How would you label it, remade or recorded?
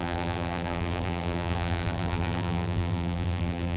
remade